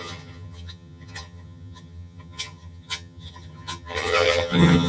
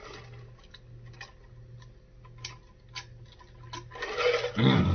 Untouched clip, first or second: second